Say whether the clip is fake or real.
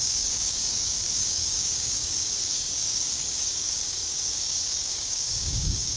fake